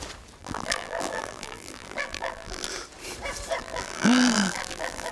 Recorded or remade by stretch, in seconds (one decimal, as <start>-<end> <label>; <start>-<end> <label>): 0.0-0.4 recorded; 0.4-2.7 remade; 2.7-3.6 recorded; 3.6-5.1 remade